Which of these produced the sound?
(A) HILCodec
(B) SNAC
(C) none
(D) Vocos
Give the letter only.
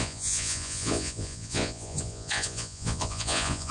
D